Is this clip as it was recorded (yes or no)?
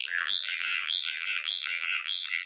no